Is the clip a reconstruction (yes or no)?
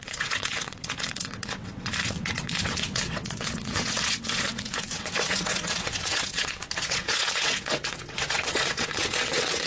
yes